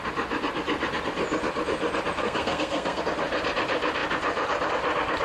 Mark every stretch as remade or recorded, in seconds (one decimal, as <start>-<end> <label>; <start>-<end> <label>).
0.0-2.2 recorded; 2.2-3.0 remade; 3.0-5.2 recorded